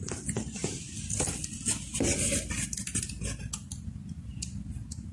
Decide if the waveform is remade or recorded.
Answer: recorded